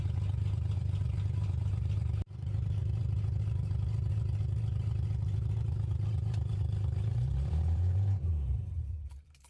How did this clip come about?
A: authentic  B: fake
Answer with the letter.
B